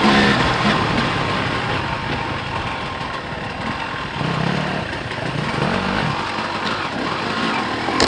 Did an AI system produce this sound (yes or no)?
no